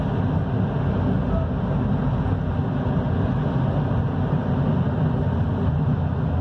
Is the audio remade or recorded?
recorded